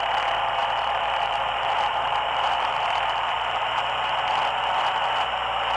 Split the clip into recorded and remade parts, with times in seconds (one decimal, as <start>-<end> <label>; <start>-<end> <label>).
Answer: 0.0-0.6 recorded; 0.6-3.8 remade; 3.8-5.8 recorded